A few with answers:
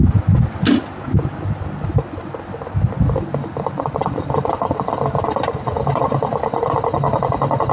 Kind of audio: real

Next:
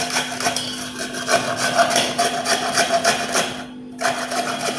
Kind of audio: real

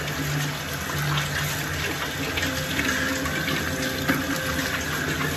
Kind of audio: real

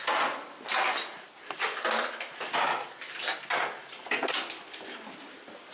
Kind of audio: real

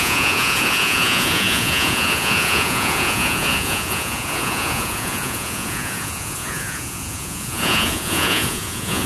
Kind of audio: fake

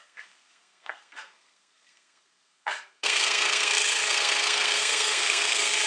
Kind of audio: fake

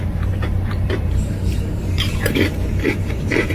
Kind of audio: fake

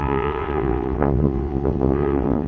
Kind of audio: fake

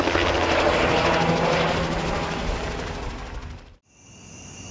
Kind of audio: real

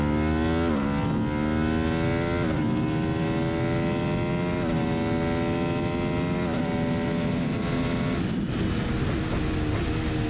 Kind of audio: real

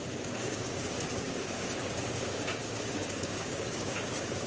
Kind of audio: fake